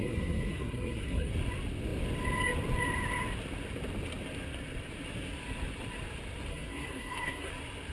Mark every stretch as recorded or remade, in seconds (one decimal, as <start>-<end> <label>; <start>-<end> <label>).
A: 0.0-1.3 remade; 1.3-6.5 recorded; 6.5-7.5 remade; 7.5-7.9 recorded